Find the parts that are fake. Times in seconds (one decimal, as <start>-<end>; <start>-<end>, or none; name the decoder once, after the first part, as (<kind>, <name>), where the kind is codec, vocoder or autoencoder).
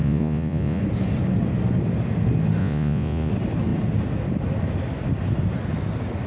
0.0-0.8 (vocoder, Vocos); 2.6-3.3